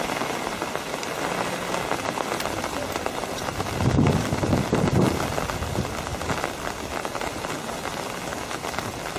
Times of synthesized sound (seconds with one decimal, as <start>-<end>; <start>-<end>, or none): none